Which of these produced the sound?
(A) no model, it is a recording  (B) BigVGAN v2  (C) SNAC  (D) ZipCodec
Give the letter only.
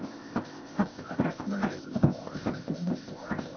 D